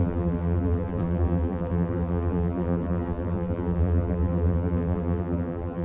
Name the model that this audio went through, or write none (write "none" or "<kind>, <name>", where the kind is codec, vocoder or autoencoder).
vocoder, BigVGAN v2